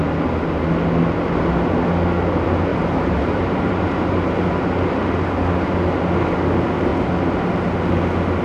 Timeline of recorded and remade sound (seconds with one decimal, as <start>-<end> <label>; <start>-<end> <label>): 0.0-2.7 recorded; 2.7-4.4 remade; 4.4-8.4 recorded